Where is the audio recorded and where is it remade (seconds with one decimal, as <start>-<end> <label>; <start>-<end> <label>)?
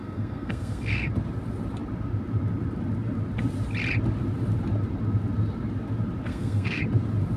0.0-1.1 remade; 1.1-6.3 recorded; 6.3-6.8 remade; 6.8-7.4 recorded